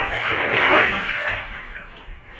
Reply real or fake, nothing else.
fake